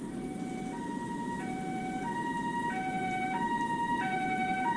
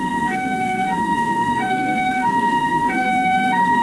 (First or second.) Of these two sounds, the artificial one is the second